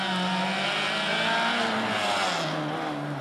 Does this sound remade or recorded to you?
recorded